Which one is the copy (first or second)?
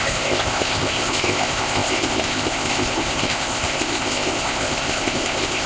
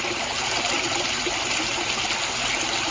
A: first